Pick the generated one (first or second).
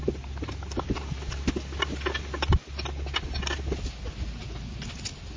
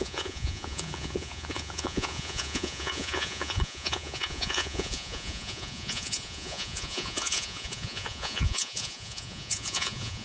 second